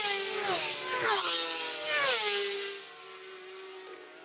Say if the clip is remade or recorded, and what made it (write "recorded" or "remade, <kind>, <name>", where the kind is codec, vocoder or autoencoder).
recorded